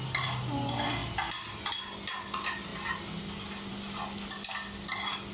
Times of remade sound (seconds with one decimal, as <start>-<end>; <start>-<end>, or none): none